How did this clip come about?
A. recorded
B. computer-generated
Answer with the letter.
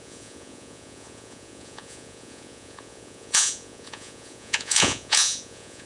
B